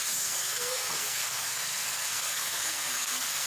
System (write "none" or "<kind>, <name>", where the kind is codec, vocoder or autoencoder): codec, SNAC